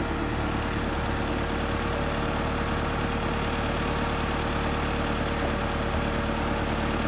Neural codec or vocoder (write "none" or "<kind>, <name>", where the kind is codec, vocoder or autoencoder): none